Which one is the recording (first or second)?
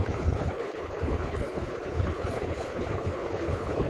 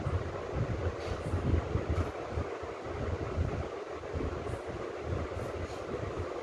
second